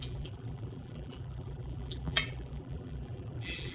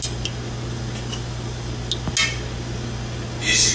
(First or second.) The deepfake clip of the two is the first